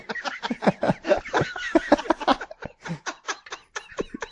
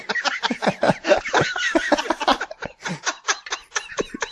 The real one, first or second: first